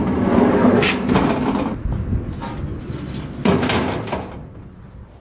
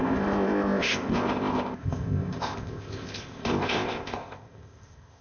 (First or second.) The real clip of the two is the first